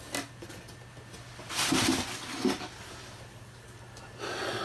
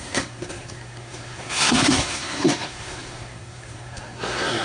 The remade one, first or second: second